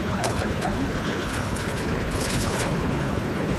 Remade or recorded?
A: remade